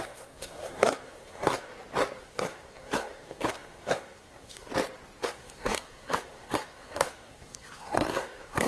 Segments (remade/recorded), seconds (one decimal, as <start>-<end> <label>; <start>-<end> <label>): 0.0-1.7 remade; 1.7-2.2 recorded; 2.2-4.7 remade; 4.7-5.2 recorded; 5.2-8.7 remade